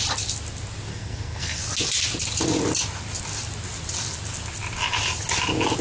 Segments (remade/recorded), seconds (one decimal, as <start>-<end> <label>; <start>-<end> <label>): 0.0-0.9 recorded; 0.9-1.6 remade; 1.6-5.8 recorded